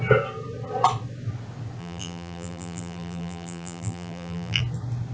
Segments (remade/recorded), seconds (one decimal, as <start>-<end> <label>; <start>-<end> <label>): 0.0-1.8 recorded; 1.8-4.6 remade; 4.6-5.1 recorded